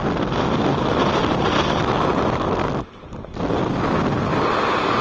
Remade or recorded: recorded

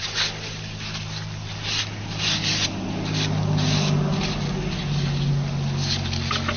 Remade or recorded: recorded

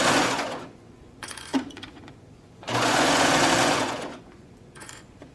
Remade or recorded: remade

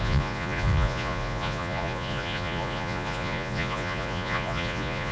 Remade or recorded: remade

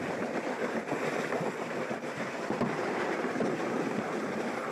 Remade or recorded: recorded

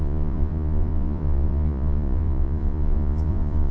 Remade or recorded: remade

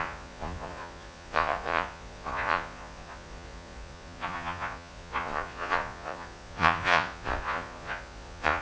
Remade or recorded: remade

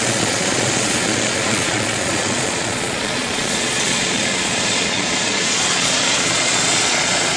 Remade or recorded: remade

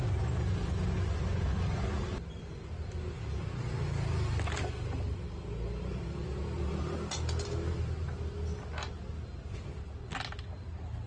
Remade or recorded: recorded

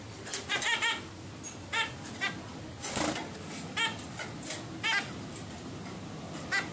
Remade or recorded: recorded